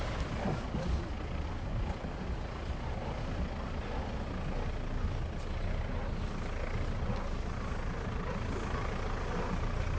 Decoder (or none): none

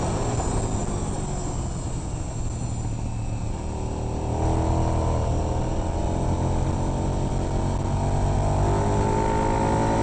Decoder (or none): none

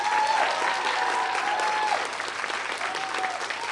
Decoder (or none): none